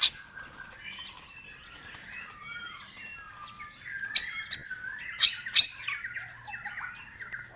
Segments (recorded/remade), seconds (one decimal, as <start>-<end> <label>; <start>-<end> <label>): 0.0-7.6 recorded